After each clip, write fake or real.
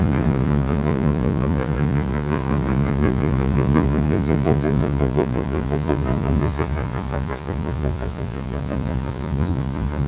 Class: fake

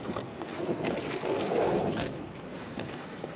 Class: fake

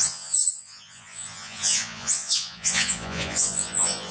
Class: fake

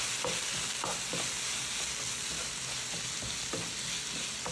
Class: real